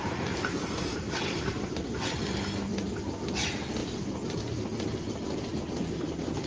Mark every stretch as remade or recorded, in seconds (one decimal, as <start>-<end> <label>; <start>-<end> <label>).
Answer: 0.0-0.6 recorded; 0.6-1.7 remade; 1.7-3.8 recorded; 3.8-5.4 remade; 5.4-6.5 recorded